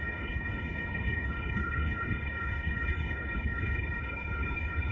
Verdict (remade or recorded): remade